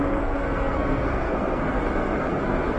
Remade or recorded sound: remade